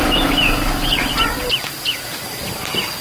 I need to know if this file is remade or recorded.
recorded